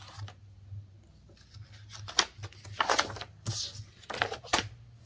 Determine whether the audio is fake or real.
real